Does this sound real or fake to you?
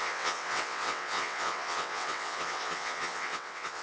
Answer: fake